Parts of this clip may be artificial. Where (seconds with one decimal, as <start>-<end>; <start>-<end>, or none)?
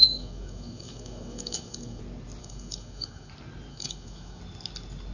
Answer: 0.0-2.0; 2.4-3.3; 3.7-4.4